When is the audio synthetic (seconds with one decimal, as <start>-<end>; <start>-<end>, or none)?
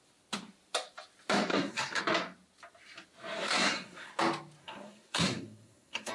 1.5-2.0; 3.4-4.1; 4.6-6.1